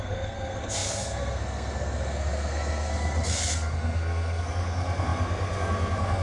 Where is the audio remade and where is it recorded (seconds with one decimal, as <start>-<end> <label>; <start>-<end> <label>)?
0.0-6.2 remade